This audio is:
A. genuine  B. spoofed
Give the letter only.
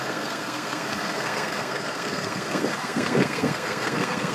B